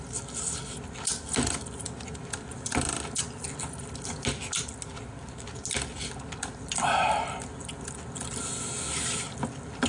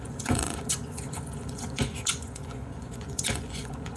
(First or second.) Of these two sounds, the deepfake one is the second